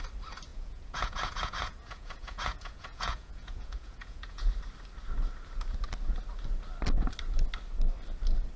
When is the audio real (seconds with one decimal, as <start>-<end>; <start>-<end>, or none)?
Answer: 0.0-0.5; 4.5-8.6